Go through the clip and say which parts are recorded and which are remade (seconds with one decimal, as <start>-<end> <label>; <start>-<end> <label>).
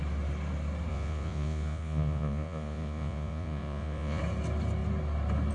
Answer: 0.0-0.9 recorded; 0.9-4.2 remade; 4.2-5.5 recorded